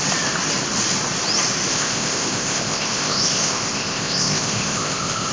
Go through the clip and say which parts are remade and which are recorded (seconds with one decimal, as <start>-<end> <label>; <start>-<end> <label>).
0.0-1.7 recorded; 1.7-5.3 remade